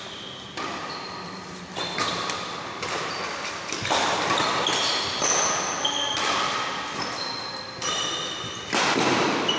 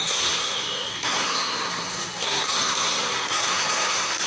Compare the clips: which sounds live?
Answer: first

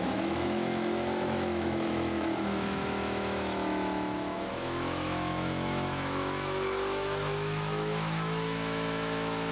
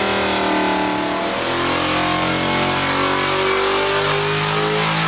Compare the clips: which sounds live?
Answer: second